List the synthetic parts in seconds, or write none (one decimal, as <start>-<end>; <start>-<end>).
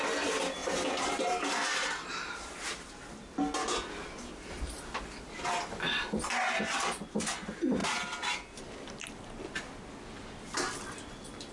0.6-2.9